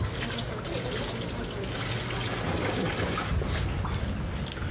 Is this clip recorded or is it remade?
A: recorded